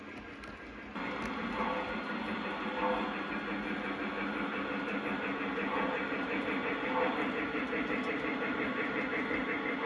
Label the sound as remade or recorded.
recorded